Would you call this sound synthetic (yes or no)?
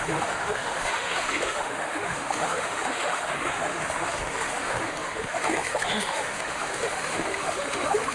yes